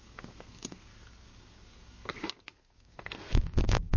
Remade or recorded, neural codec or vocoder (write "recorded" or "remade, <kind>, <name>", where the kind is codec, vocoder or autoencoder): remade, codec, SNAC